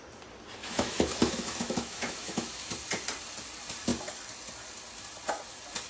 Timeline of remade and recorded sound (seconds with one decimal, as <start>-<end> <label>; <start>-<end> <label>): 0.0-0.6 recorded; 0.6-2.7 remade; 2.7-5.9 recorded